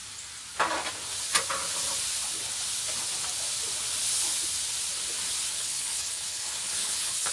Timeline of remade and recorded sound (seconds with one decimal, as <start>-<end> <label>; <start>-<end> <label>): 0.0-5.5 recorded; 5.5-7.3 remade